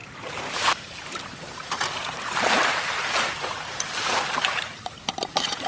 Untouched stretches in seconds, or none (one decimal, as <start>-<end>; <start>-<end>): none